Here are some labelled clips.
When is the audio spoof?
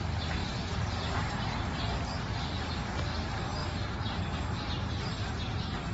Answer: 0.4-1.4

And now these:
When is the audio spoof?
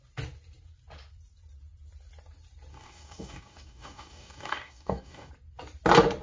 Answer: 2.7-5.3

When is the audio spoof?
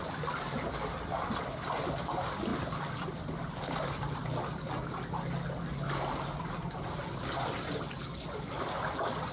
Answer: none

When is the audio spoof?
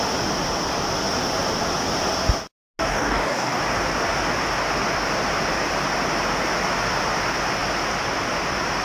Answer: 2.9-3.6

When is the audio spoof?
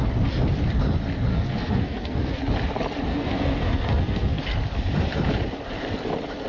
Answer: 1.3-2.4; 3.1-4.4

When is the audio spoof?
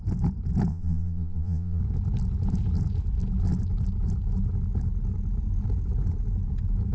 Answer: 0.7-1.8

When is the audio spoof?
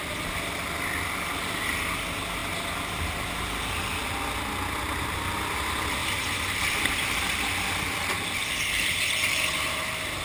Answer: none